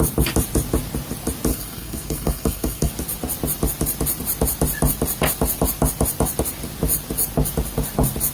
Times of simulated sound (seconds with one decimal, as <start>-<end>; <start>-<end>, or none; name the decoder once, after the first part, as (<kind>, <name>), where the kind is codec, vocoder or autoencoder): 1.5-2.9 (codec, SNAC)